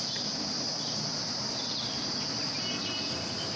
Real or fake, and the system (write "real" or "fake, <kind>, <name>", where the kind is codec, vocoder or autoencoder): real